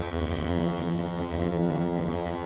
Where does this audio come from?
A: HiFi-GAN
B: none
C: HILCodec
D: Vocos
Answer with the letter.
A